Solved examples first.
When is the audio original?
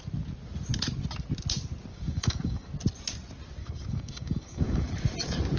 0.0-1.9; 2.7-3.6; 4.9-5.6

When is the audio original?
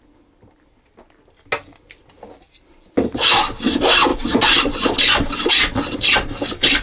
0.0-6.8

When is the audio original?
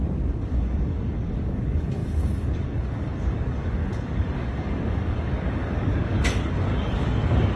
none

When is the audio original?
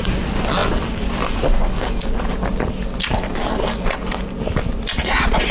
0.0-5.5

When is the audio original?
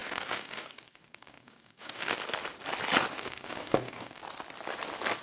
2.2-3.1; 4.2-5.2